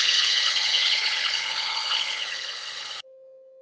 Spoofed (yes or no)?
yes